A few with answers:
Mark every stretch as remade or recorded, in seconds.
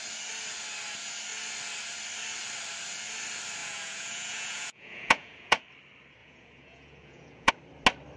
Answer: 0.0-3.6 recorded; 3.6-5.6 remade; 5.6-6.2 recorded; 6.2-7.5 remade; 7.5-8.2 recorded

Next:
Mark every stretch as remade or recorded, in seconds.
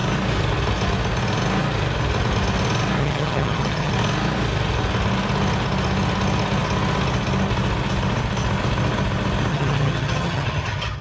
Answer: 0.0-3.0 recorded; 3.0-3.9 remade; 3.9-9.5 recorded; 9.5-11.0 remade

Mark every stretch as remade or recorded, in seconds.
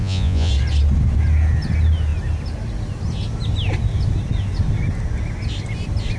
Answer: 0.0-0.5 remade; 0.5-6.2 recorded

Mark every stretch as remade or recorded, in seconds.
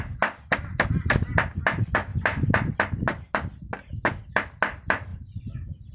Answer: 0.0-5.9 recorded